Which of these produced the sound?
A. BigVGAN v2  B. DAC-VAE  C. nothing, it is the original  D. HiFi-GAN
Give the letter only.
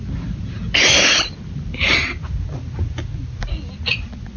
C